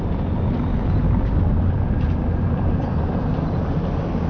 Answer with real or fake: real